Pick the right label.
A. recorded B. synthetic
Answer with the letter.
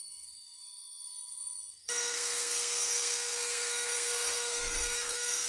B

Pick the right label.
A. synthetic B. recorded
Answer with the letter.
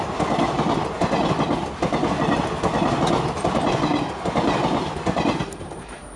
B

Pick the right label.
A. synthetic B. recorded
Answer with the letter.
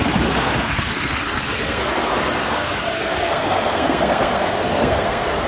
A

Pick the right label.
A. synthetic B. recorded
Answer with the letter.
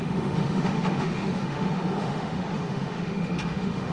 A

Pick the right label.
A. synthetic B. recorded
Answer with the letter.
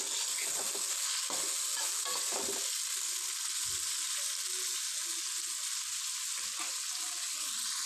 B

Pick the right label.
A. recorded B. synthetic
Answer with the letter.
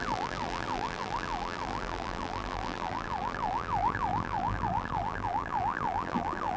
B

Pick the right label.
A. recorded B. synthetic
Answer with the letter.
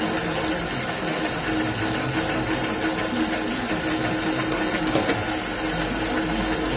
A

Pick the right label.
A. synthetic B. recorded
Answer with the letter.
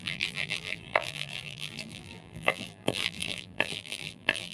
A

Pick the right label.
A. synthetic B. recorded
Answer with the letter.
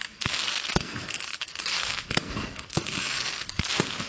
A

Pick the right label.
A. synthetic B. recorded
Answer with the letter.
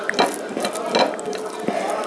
B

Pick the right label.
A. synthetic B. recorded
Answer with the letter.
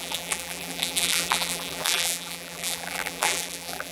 A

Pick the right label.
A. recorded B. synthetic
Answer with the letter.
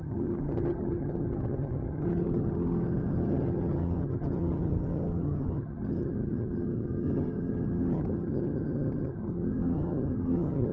B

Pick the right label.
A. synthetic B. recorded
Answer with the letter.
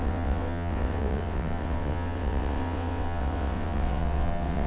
A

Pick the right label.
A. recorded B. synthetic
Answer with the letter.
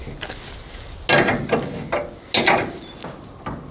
A